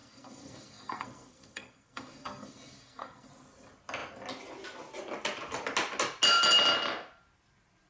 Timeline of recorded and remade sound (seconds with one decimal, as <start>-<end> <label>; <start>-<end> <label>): 0.0-3.3 remade; 3.3-7.9 recorded